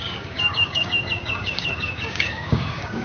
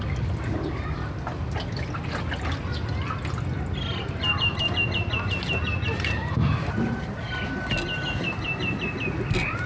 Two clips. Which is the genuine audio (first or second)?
second